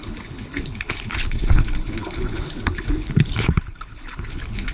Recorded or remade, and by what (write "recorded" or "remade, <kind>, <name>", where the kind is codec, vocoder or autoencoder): remade, codec, HILCodec